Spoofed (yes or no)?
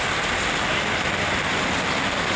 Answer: no